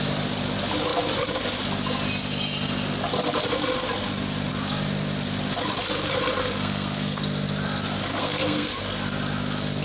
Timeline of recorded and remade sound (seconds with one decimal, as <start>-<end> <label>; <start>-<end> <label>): 0.0-6.4 recorded; 6.4-7.2 remade; 7.2-8.1 recorded; 8.1-8.8 remade; 8.8-9.8 recorded